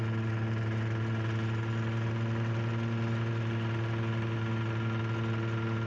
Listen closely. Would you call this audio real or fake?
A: real